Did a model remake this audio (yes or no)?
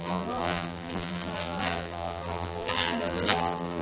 yes